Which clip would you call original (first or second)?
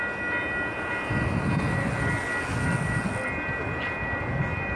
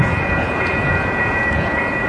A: first